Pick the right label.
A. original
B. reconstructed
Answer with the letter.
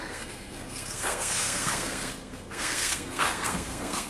B